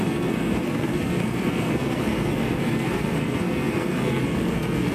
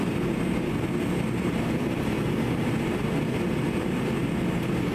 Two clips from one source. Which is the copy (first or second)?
first